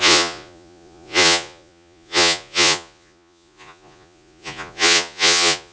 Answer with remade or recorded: remade